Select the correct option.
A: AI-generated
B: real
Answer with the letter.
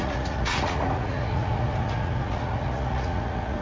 A